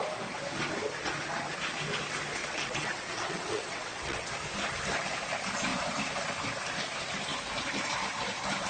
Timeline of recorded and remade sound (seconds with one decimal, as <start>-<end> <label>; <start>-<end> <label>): 0.0-2.4 recorded; 2.4-4.3 remade; 4.3-8.7 recorded